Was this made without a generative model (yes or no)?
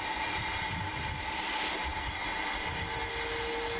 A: yes